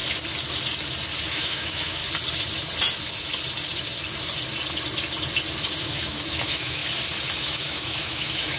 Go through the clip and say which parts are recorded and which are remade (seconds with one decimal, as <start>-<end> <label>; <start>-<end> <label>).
0.0-1.3 recorded; 1.3-2.0 remade; 2.0-5.8 recorded; 5.8-6.8 remade; 6.8-7.4 recorded; 7.4-8.6 remade